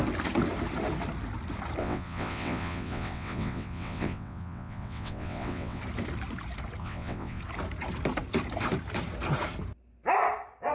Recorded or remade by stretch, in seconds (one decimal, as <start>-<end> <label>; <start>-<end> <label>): 0.0-1.8 recorded; 1.8-5.8 remade; 5.8-6.8 recorded; 6.8-7.4 remade; 7.4-10.7 recorded